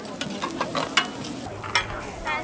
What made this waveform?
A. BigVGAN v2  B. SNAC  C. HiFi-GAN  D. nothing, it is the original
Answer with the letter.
D